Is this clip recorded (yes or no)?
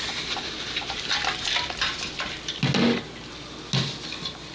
yes